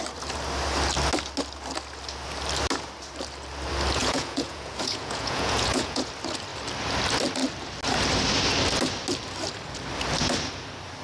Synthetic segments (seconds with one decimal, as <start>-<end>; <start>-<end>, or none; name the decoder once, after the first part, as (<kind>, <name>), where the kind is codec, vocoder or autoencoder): 4.0-6.1 (vocoder, Vocos)